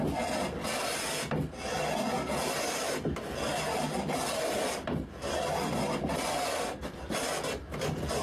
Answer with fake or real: real